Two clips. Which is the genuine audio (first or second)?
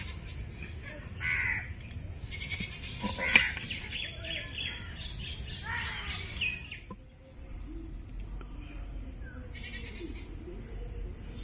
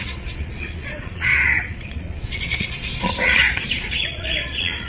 first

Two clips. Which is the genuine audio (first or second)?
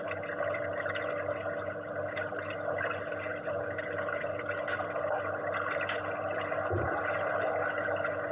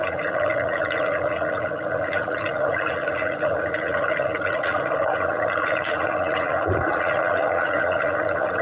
first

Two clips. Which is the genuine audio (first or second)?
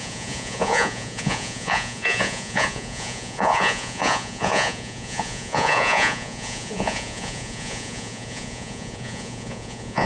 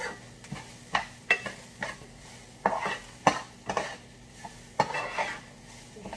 second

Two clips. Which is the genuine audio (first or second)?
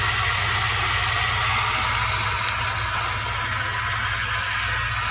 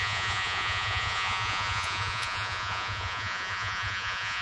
first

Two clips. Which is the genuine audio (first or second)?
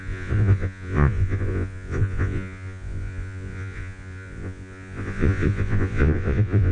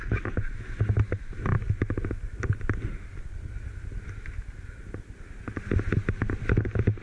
second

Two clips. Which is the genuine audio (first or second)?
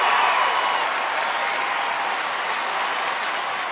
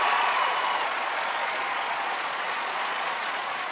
first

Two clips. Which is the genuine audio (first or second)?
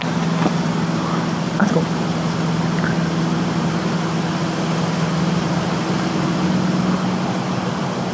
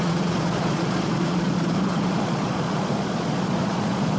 first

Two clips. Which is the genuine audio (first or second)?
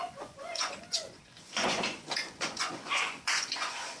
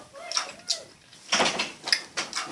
second